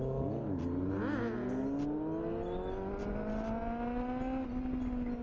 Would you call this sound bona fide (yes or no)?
yes